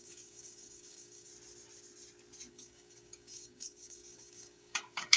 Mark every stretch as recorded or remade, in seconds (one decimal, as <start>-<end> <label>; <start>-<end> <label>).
0.0-1.3 remade; 1.3-2.5 recorded; 2.5-5.2 remade